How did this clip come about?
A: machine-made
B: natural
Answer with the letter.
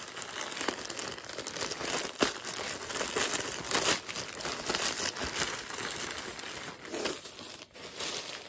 B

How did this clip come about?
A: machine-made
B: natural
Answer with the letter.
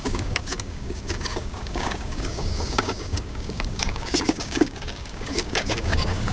A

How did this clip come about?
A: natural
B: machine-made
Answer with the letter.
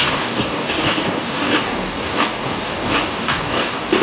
B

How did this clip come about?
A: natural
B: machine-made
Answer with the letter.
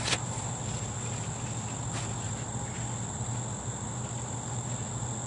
A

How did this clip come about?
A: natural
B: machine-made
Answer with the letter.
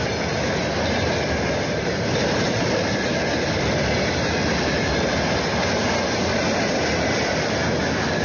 A